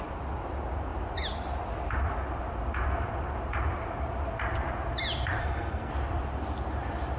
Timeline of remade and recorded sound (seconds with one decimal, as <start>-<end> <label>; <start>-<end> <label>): 0.0-5.4 recorded; 5.4-5.9 remade; 5.9-7.2 recorded